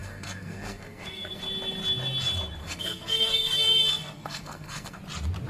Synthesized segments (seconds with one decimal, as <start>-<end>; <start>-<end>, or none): 0.0-1.4; 2.6-5.0